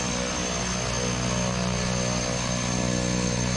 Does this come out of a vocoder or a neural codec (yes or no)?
no